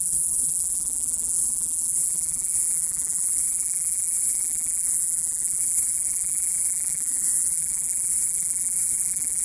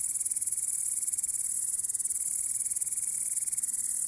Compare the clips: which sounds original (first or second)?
second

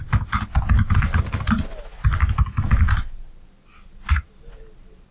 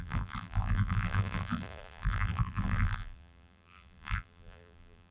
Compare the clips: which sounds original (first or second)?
first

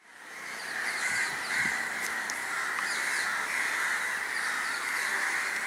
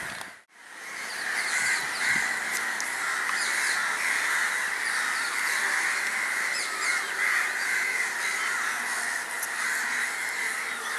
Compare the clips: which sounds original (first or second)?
second